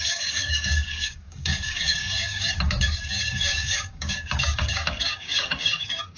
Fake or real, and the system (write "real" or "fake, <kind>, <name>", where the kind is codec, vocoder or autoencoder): fake, codec, DAC